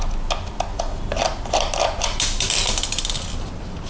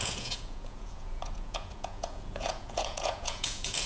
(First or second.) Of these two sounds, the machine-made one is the second